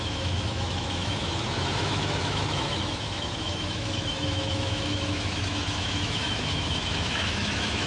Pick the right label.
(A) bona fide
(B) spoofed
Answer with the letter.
B